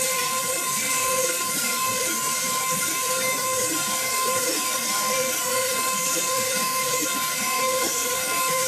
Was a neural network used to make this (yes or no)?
yes